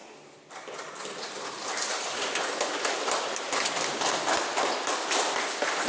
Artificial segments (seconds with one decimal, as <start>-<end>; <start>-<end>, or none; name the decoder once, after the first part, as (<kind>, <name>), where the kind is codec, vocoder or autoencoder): none